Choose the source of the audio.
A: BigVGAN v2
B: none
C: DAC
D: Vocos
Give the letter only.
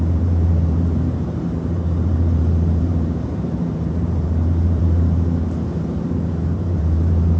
A